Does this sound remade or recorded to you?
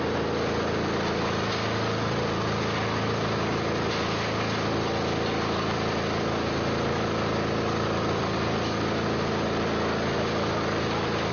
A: recorded